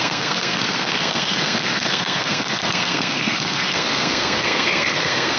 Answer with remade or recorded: remade